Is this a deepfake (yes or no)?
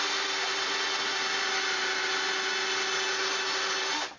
no